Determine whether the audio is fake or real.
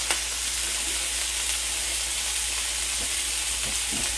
real